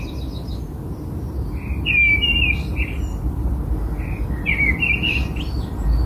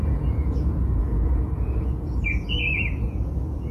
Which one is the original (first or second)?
first